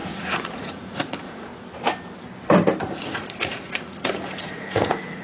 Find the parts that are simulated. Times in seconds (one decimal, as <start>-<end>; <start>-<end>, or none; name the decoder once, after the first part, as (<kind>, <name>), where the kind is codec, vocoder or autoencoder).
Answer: 0.0-1.5 (vocoder, Vocos); 2.8-5.2